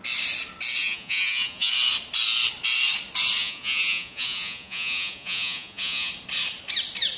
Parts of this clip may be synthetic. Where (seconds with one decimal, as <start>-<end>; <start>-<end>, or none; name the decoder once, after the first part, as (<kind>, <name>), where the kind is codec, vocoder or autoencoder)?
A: 0.8-1.7 (vocoder, Vocos); 3.4-6.1